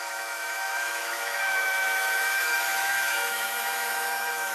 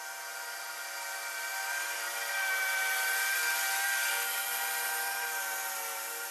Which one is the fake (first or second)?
first